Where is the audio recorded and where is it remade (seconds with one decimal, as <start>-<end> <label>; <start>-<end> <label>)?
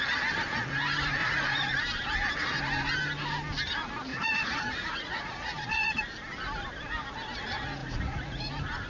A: 0.0-1.2 recorded; 1.2-1.8 remade; 1.8-4.1 recorded; 4.1-6.0 remade; 6.0-7.8 recorded; 7.8-8.5 remade; 8.5-8.9 recorded